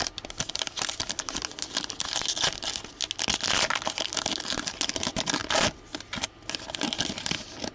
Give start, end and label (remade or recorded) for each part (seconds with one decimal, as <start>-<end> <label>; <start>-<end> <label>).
0.0-7.7 recorded